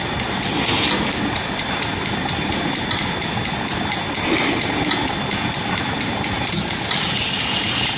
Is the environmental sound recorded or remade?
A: recorded